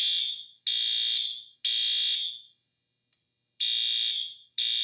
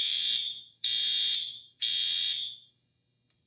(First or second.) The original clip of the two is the first